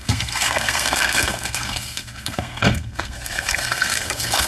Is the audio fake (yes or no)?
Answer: yes